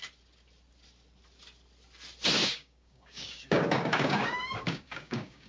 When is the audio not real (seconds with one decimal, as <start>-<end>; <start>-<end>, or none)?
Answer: 2.4-5.5